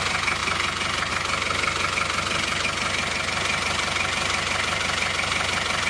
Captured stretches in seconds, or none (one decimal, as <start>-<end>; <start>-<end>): 0.0-5.9